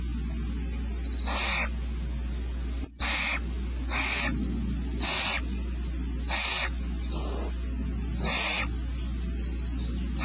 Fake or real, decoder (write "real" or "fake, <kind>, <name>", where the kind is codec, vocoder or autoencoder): real